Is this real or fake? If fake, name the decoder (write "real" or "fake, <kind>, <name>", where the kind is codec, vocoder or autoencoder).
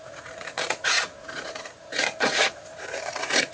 fake, vocoder, Vocos